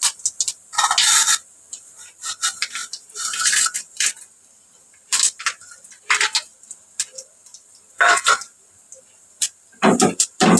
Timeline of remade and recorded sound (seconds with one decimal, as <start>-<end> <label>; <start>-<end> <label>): 0.0-2.8 recorded; 2.8-5.4 remade; 5.4-7.4 recorded; 7.4-10.6 remade